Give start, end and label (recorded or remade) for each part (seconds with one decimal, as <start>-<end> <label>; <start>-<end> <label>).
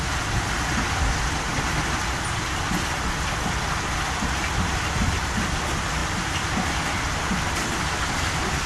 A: 0.0-8.7 recorded